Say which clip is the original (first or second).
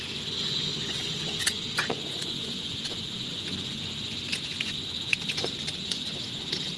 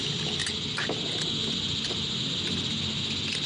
second